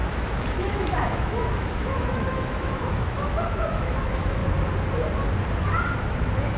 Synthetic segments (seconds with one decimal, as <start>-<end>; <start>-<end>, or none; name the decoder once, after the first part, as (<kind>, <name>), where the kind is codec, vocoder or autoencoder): 0.0-4.4 (autoencoder, DAC-VAE); 6.0-6.6